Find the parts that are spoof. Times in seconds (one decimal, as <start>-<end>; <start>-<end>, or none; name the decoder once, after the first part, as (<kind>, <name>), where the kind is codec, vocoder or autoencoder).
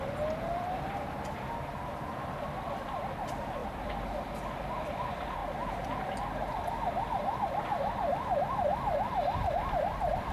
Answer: 0.0-5.4 (vocoder, BigVGAN v2); 6.5-10.3